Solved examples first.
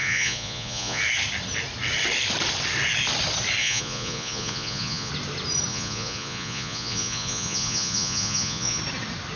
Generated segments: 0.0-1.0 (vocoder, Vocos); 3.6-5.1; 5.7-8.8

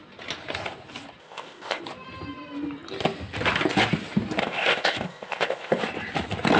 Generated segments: 1.2-1.8 (codec, ZipCodec); 4.4-5.8

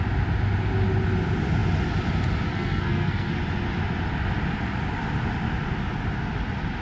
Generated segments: 2.5-3.3 (codec, SNAC)

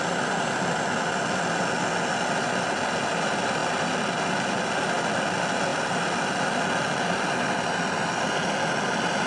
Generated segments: none

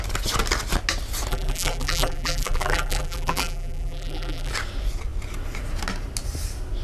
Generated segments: 1.3-4.5 (vocoder, BigVGAN v2)

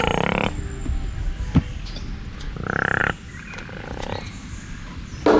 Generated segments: none

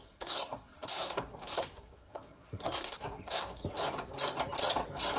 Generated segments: 0.0-3.6 (codec, SNAC)

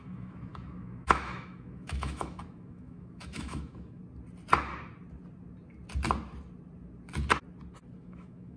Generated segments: 0.0-4.0 (autoencoder, DAC-VAE); 8.0-8.6